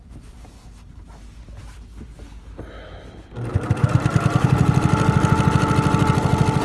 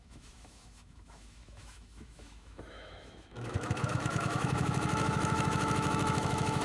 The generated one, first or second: second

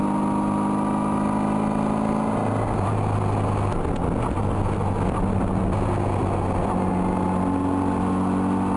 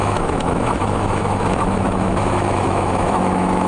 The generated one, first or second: second